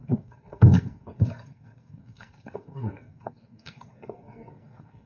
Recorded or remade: remade